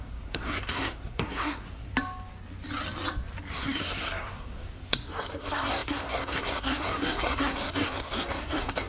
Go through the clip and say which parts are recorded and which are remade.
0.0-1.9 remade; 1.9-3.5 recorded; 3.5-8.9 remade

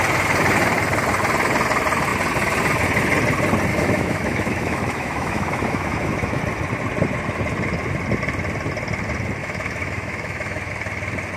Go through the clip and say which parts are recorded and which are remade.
0.0-3.7 recorded; 3.7-6.4 remade; 6.4-9.4 recorded; 9.4-10.7 remade; 10.7-11.4 recorded

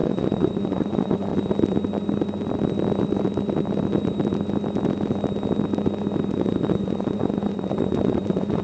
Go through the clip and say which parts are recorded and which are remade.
0.0-1.3 remade; 1.3-6.3 recorded; 6.3-8.6 remade

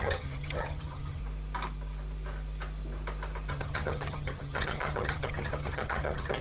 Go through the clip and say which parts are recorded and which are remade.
0.0-1.2 remade; 1.2-3.5 recorded; 3.5-6.4 remade

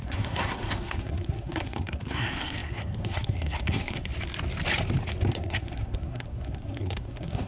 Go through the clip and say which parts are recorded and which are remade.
0.0-4.1 remade; 4.1-5.3 recorded; 5.3-7.5 remade

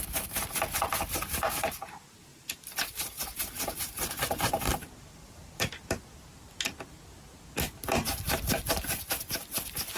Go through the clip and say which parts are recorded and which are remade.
0.0-2.3 recorded; 2.3-5.7 remade; 5.7-10.0 recorded

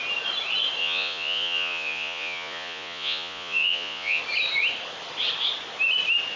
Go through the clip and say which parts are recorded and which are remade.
0.0-0.8 recorded; 0.8-4.2 remade; 4.2-6.4 recorded